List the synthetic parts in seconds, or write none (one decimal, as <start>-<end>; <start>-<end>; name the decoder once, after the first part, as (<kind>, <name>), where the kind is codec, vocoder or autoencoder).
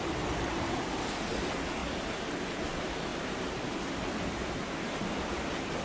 none